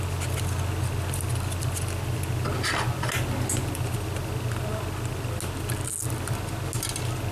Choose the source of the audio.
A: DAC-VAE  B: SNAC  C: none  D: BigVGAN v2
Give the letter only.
C